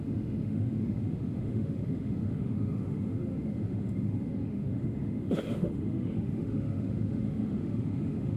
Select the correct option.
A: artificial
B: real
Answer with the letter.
A